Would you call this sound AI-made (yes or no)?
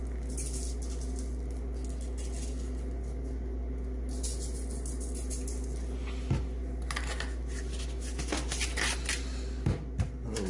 no